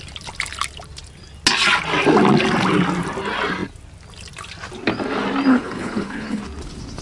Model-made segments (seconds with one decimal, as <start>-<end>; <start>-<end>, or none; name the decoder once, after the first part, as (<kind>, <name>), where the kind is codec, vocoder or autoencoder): 5.5-6.4 (codec, HILCodec)